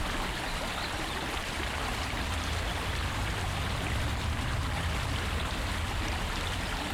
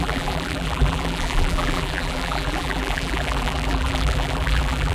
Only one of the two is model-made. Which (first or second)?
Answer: second